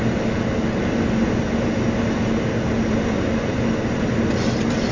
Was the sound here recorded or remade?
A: recorded